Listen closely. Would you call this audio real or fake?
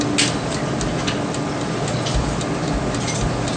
real